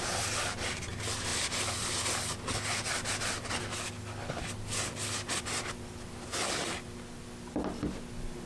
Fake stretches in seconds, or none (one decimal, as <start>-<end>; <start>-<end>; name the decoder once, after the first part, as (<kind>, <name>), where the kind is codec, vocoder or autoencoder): none